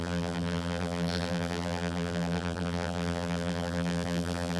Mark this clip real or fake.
fake